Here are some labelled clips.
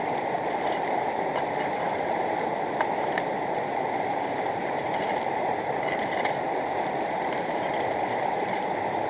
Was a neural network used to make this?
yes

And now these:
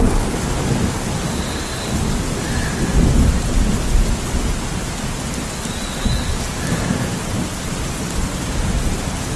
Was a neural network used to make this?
no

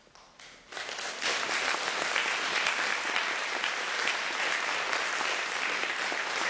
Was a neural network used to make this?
no